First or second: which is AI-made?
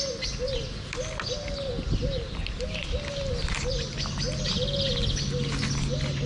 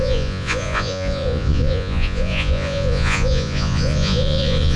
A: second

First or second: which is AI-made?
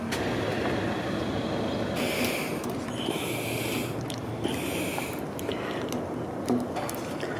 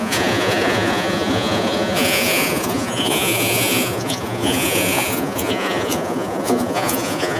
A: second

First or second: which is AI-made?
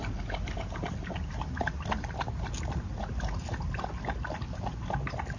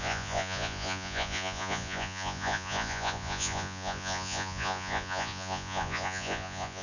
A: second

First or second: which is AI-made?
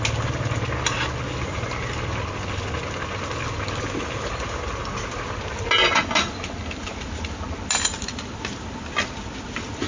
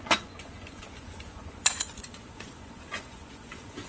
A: second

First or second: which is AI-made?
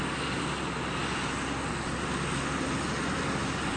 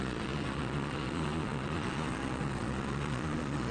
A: second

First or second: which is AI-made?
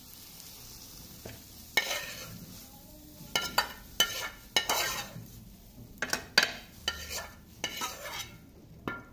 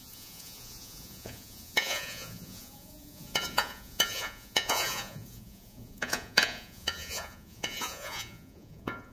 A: second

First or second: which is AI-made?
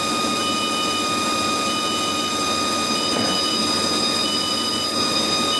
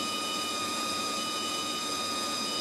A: second